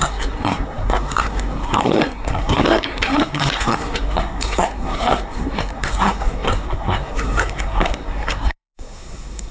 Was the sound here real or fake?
fake